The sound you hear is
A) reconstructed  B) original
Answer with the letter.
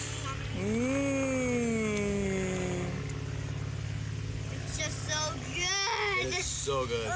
B